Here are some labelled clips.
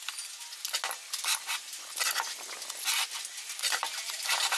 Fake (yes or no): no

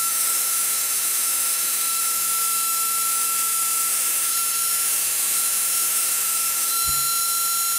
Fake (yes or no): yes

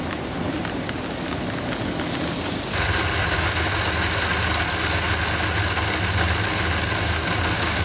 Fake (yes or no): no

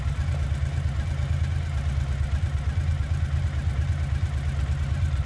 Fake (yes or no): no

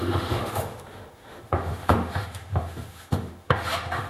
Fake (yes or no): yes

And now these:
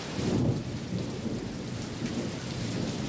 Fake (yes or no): no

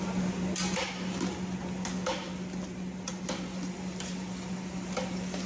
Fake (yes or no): no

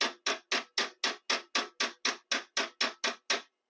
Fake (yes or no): no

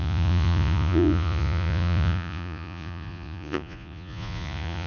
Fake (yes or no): yes